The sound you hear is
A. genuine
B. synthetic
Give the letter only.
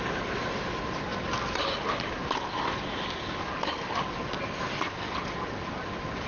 A